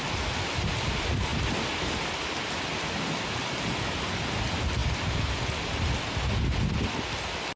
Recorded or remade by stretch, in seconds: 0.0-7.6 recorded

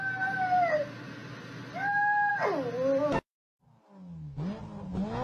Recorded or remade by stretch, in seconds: 0.0-5.2 recorded

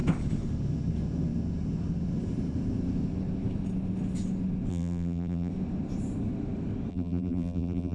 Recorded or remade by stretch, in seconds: 0.0-4.7 recorded; 4.7-5.5 remade; 5.5-6.9 recorded; 6.9-7.9 remade

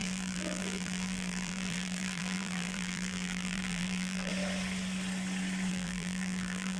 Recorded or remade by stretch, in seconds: 0.0-4.3 remade; 4.3-5.7 recorded; 5.7-6.8 remade